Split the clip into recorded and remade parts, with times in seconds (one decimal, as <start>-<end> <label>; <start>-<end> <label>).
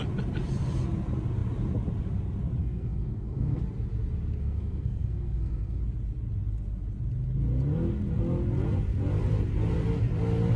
0.0-2.6 recorded; 2.6-3.6 remade; 3.6-4.4 recorded; 4.4-5.8 remade; 5.8-10.6 recorded